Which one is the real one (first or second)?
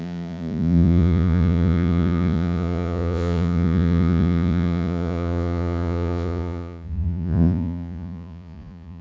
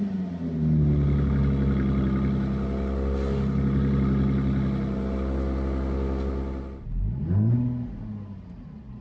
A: second